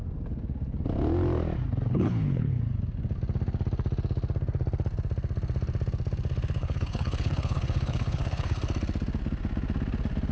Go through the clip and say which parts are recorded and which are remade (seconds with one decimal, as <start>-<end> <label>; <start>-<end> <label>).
0.0-1.9 recorded; 1.9-2.5 remade; 2.5-6.6 recorded; 6.6-8.6 remade; 8.6-10.3 recorded